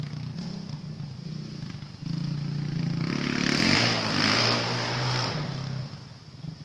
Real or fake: real